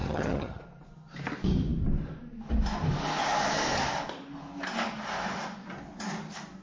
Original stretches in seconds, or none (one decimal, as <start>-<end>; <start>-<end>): 0.6-6.6